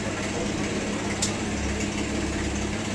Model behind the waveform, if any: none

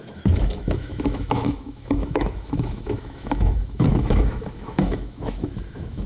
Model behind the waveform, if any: autoencoder, DAC-VAE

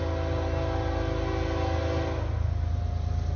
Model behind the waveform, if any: none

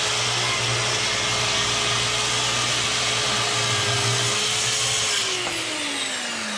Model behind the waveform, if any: none